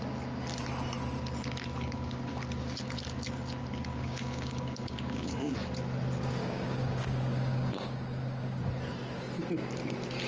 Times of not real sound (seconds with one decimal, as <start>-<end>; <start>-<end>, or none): 3.9-5.5; 6.4-8.7